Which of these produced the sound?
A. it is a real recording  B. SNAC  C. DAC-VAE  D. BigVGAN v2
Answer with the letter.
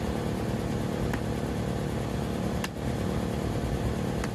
A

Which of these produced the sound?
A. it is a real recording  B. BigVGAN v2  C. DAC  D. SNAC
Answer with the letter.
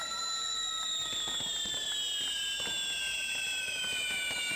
A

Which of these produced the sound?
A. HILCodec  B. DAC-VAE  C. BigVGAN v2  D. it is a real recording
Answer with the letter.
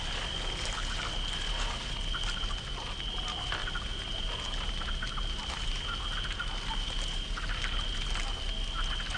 D